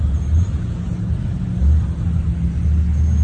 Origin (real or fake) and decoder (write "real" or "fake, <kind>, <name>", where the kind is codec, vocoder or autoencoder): real